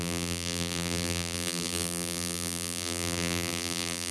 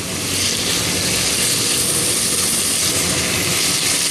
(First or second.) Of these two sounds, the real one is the second